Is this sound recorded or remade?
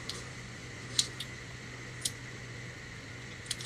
remade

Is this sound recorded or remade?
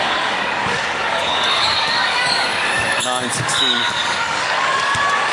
remade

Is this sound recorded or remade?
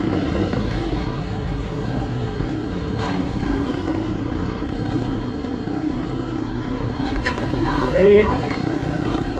remade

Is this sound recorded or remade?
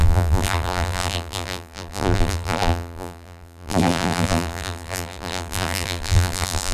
remade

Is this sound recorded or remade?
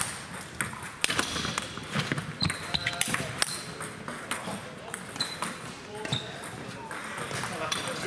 recorded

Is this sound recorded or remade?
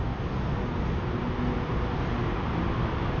recorded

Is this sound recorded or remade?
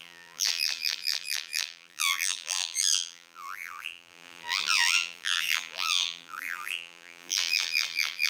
remade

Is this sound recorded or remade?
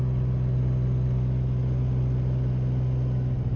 recorded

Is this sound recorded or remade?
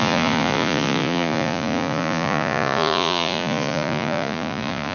remade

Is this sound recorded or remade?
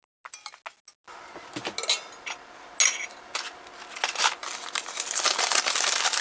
recorded